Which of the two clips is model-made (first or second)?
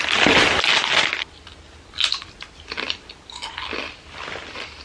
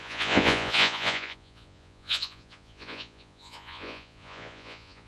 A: second